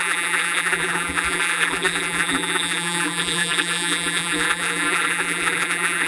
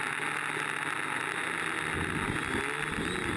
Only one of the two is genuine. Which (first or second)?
second